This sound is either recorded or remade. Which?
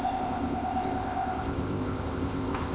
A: remade